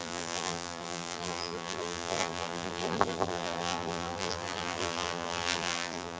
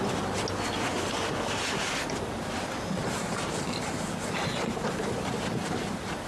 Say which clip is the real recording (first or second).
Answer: second